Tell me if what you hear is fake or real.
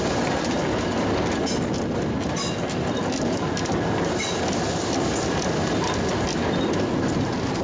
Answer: real